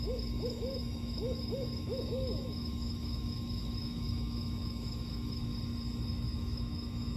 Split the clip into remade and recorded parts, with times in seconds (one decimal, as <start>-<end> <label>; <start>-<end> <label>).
0.0-5.5 remade; 5.5-6.1 recorded; 6.1-7.2 remade